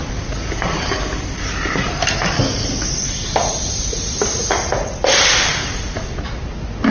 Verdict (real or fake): real